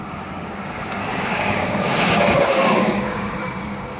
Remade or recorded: remade